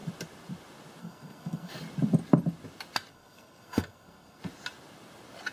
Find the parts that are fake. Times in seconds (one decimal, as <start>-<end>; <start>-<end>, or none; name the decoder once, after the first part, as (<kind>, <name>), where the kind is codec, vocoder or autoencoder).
1.0-1.7 (codec, SNAC); 3.1-4.4